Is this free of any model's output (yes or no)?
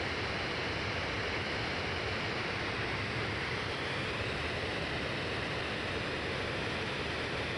yes